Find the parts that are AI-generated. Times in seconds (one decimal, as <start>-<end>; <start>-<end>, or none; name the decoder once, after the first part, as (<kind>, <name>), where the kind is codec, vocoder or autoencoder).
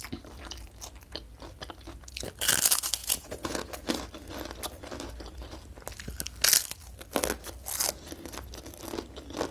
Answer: 3.0-3.8 (vocoder, Vocos)